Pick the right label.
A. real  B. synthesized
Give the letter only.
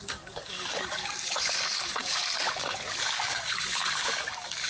B